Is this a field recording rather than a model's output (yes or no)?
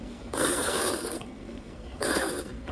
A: no